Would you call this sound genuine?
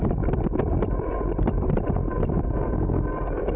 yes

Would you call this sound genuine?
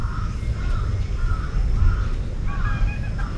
yes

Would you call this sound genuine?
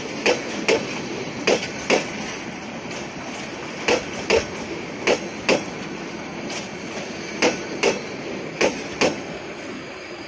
yes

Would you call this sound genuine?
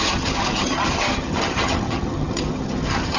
no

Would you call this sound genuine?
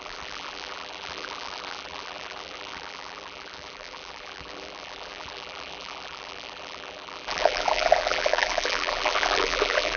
no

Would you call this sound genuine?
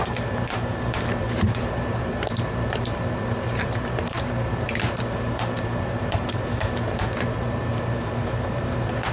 no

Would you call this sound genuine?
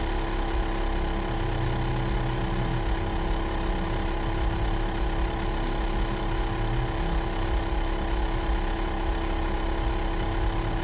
yes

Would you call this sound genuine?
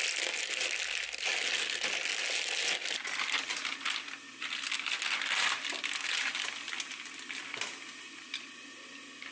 yes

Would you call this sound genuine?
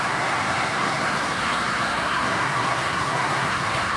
no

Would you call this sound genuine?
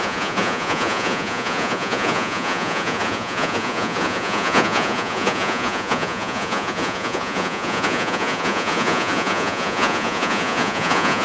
no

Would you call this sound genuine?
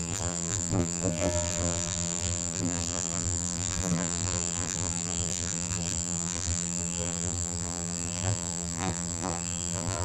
no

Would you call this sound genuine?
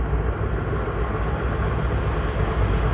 yes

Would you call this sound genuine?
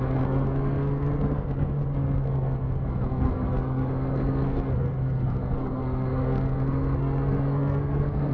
no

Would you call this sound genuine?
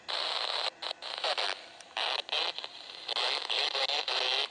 yes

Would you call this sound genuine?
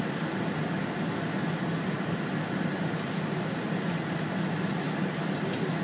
yes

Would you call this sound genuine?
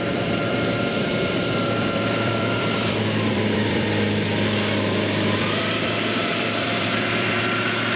no